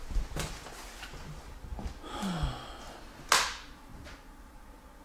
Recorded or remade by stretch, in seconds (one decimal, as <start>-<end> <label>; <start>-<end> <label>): 0.0-3.9 recorded; 3.9-4.6 remade; 4.6-5.0 recorded